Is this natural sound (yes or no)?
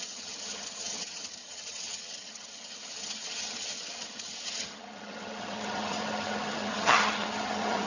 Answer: no